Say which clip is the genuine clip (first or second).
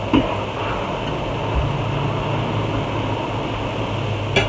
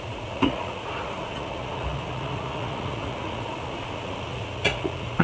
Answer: first